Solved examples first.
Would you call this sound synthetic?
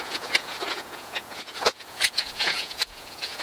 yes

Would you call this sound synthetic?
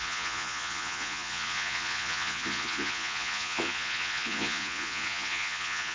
yes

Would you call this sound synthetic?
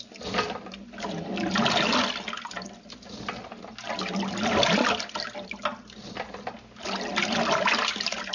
no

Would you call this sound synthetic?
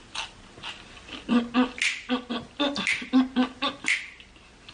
no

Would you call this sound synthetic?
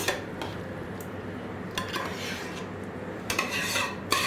no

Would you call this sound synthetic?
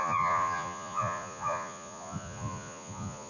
yes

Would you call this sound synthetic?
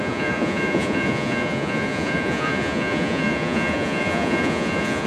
yes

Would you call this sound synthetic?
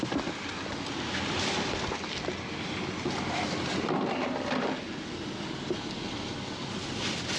no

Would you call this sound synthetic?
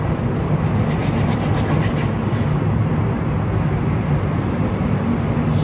no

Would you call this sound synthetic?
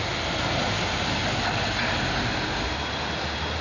no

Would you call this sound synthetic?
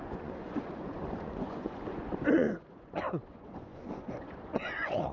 yes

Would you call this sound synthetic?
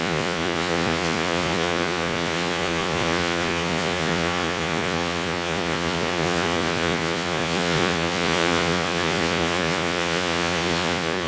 yes